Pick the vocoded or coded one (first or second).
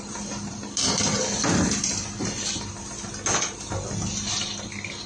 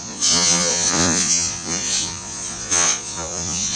second